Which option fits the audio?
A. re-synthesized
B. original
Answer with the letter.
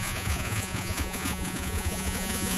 A